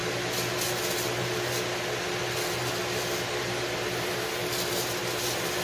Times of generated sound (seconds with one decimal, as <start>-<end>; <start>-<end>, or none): none